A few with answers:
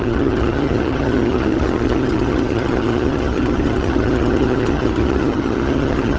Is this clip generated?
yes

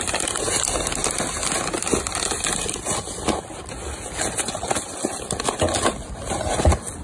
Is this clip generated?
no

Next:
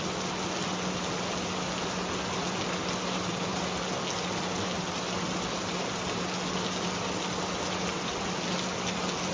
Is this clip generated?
no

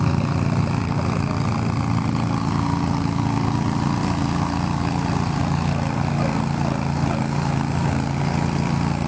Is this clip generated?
no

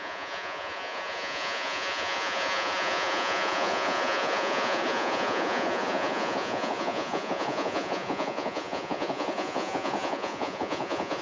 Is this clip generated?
yes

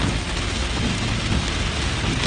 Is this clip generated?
no